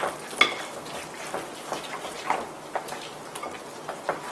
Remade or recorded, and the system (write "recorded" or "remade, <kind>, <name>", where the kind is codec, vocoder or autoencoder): recorded